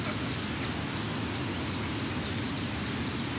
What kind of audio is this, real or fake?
real